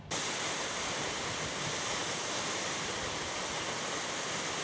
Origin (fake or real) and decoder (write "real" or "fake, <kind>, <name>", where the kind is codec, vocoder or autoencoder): real